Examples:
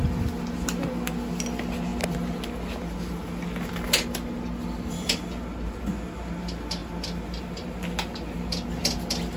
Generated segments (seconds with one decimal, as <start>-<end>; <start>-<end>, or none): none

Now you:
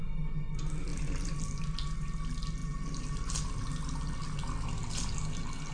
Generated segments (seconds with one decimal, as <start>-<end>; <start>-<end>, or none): 0.9-1.6

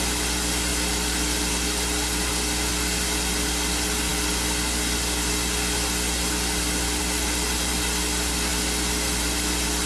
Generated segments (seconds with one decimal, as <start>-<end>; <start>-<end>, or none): none